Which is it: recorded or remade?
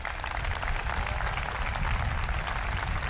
recorded